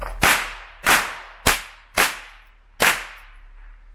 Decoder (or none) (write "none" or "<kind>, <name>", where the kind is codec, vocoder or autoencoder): none